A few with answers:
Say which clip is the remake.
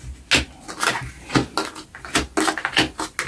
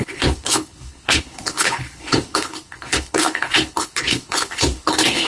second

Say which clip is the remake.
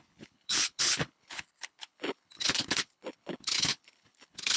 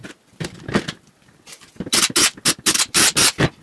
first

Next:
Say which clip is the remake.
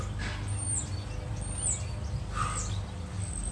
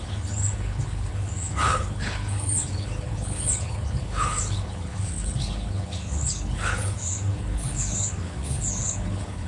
second